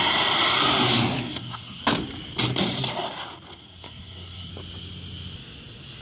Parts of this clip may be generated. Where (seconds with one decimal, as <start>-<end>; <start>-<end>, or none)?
1.2-1.8; 3.6-4.5